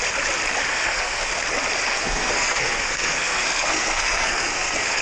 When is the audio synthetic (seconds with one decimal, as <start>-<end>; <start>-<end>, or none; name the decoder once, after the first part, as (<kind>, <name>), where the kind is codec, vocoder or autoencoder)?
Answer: 0.7-1.3 (codec, SNAC); 1.9-5.0